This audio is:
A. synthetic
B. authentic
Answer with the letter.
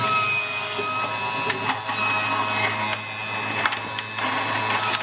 B